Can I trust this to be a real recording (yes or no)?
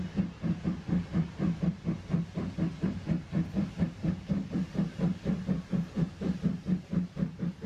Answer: yes